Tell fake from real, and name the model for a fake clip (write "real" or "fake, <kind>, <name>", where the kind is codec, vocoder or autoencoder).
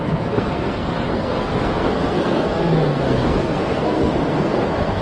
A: fake, codec, SNAC